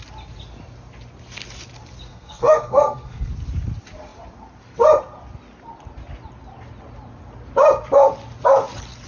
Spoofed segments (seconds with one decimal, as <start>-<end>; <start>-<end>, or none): 2.1-3.3